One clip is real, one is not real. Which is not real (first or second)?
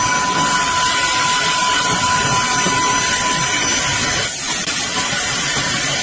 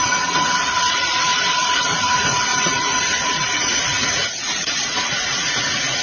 second